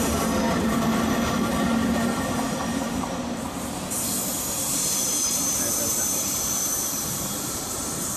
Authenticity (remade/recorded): remade